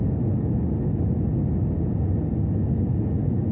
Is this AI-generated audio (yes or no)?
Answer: no